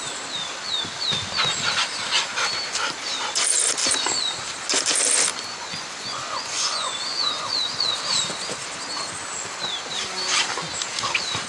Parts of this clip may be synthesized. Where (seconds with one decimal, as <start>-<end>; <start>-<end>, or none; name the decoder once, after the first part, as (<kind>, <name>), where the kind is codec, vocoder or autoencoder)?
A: 5.3-7.8 (vocoder, Vocos)